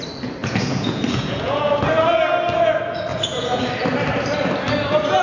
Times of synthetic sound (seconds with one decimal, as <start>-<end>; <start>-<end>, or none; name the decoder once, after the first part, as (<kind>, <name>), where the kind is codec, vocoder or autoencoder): 0.4-1.8 (vocoder, Vocos); 3.1-3.6

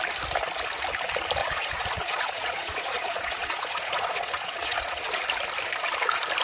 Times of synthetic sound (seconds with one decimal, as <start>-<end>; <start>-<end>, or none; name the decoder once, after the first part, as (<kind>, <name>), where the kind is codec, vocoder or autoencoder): 1.4-5.2 (vocoder, Vocos)

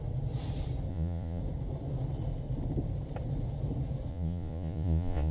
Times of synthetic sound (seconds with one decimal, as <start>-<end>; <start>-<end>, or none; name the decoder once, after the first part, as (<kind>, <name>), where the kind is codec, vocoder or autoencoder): 0.9-1.4 (vocoder, Vocos); 4.1-5.3

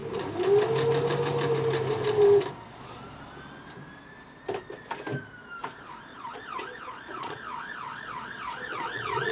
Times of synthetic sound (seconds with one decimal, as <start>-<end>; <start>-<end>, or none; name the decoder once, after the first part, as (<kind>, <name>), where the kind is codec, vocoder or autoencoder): 6.1-9.3 (vocoder, Vocos)